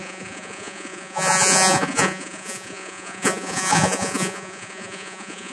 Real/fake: fake